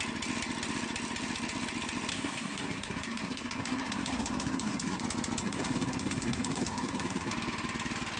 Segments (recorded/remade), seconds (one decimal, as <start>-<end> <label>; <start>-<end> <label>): 0.0-2.1 recorded; 2.1-5.0 remade; 5.0-5.4 recorded; 5.4-7.3 remade; 7.3-8.2 recorded